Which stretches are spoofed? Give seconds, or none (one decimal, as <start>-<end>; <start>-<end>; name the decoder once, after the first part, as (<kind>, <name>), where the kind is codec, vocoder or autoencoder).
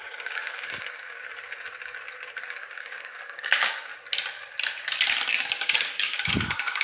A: 0.0-1.2 (codec, DAC); 2.4-3.9; 5.3-6.8